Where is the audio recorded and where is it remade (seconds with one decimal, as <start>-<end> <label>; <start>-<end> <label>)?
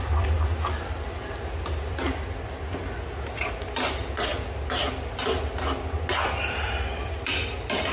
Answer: 0.0-7.9 recorded